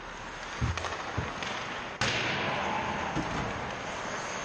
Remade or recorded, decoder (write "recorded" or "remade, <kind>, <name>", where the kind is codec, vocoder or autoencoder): recorded